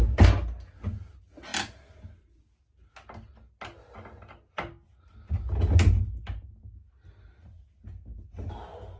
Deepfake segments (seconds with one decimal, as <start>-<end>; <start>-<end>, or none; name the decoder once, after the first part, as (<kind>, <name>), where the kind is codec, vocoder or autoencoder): none